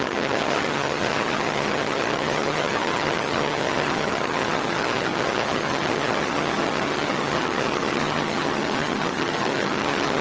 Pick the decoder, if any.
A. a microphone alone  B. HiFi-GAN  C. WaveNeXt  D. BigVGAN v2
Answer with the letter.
B